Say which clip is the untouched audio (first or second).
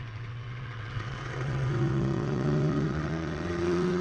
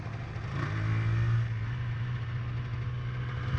second